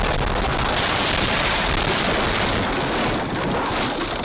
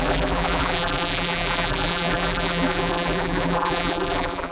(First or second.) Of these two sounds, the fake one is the second